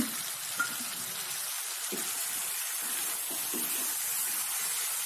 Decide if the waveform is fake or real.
real